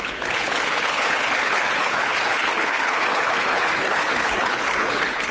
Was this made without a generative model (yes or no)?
no